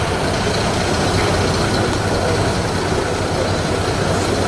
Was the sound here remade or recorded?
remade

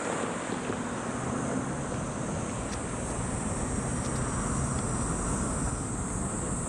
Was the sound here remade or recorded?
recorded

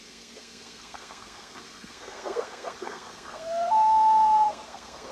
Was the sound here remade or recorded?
remade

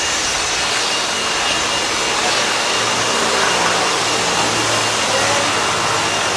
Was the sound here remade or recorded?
recorded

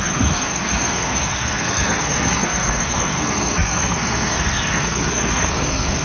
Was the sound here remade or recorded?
remade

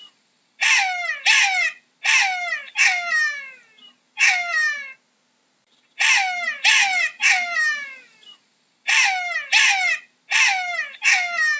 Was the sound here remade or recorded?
recorded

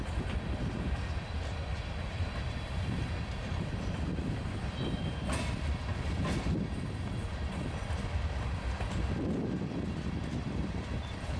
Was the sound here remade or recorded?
remade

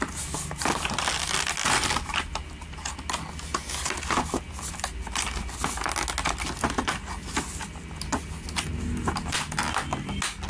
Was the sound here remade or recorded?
recorded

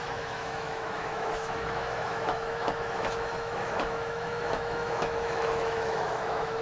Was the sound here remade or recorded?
remade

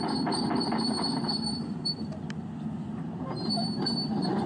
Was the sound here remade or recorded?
remade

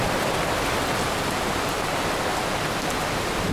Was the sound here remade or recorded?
recorded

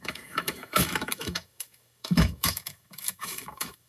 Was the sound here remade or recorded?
remade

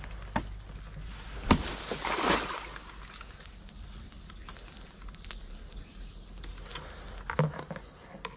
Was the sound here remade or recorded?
recorded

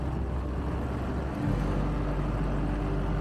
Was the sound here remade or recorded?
recorded